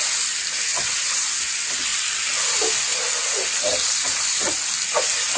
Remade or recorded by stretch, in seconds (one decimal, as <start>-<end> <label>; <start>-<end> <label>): 0.0-5.4 recorded